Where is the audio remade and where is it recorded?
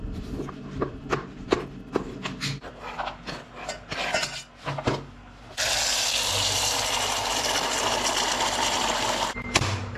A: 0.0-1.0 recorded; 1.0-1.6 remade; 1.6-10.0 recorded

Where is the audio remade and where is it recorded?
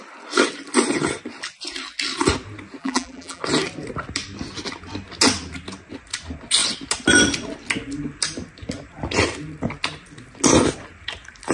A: 0.0-2.8 recorded; 2.8-3.4 remade; 3.4-11.5 recorded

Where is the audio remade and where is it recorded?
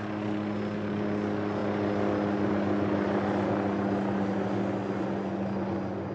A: 0.0-6.1 recorded